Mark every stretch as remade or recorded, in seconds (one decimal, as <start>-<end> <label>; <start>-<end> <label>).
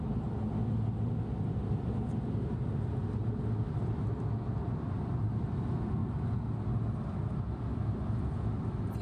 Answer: 0.0-9.0 recorded